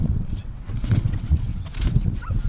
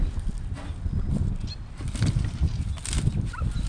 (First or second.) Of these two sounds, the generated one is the first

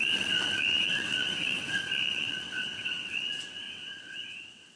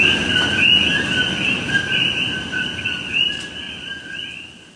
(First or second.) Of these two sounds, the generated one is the first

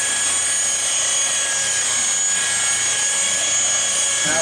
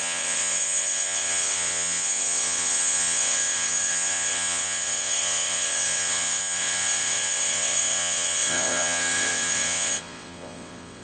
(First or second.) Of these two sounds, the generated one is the second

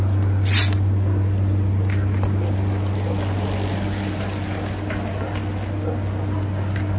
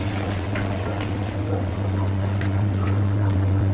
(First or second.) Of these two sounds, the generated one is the second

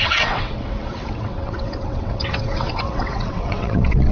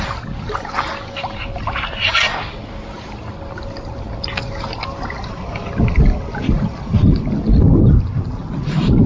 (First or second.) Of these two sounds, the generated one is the first